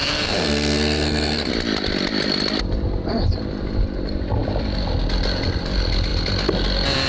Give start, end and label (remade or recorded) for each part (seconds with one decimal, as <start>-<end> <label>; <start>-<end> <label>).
0.0-1.5 remade; 1.5-7.1 recorded